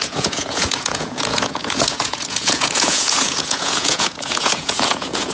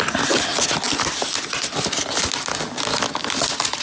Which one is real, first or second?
second